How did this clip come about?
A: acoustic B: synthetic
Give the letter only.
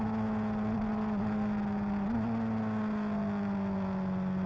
A